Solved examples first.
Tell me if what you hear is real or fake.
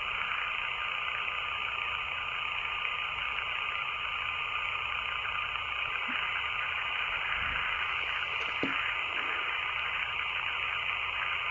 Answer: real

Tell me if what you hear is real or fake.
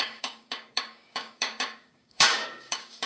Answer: fake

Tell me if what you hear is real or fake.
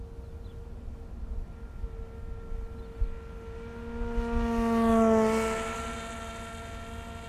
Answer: real